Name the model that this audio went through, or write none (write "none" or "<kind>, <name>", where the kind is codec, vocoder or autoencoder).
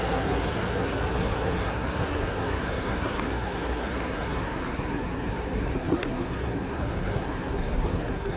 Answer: codec, SNAC